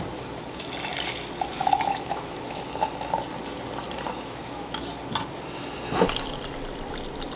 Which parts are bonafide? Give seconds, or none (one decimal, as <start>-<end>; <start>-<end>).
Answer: 0.0-1.6; 2.6-4.1; 4.9-7.4